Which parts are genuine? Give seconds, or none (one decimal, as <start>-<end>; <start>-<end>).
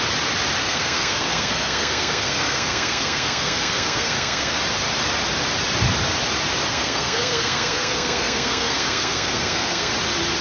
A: 0.0-0.6; 4.6-6.7; 9.9-10.4